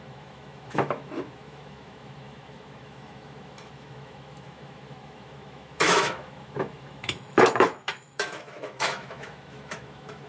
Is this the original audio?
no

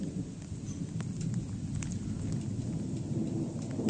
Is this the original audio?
yes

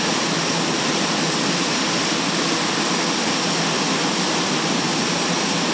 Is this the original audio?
yes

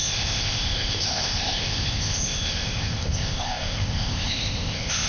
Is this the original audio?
no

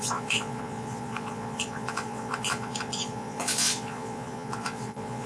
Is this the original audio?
no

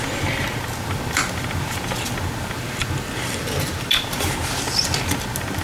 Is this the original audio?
yes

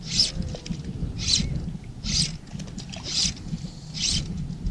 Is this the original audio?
yes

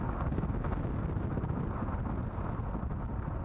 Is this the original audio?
yes